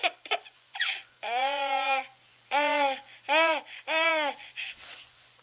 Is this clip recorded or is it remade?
remade